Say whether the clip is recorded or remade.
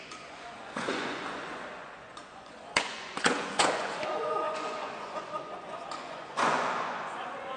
remade